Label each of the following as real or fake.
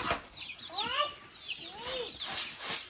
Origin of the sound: real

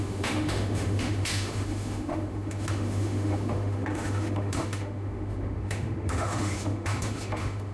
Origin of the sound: fake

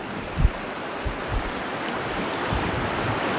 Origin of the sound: fake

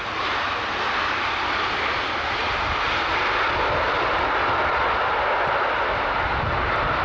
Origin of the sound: real